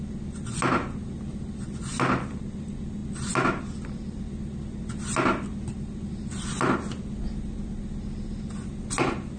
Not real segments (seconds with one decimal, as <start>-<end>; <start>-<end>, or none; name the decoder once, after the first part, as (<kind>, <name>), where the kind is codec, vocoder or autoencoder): none